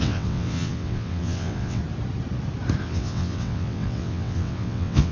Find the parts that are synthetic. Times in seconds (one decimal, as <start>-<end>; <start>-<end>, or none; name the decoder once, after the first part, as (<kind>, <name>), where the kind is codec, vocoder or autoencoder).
0.0-1.8 (vocoder, WaveNeXt); 2.8-5.1